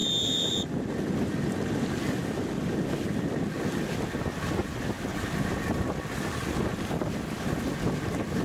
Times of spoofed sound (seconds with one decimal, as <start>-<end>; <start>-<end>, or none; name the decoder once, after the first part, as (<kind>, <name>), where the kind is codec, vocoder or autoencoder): 0.0-0.5 (vocoder, BigVGAN v2); 4.6-7.0